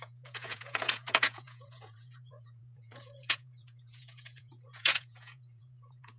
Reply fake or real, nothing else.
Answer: fake